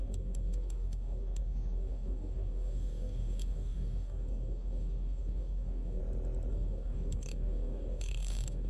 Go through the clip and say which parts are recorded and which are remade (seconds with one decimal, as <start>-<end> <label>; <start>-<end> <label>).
0.0-6.0 remade; 6.0-6.5 recorded; 6.5-8.7 remade